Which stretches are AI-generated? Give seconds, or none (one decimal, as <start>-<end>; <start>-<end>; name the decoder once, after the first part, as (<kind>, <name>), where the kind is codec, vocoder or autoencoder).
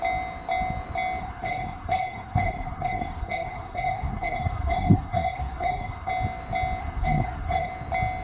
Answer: 1.2-6.1 (codec, SNAC); 6.8-7.7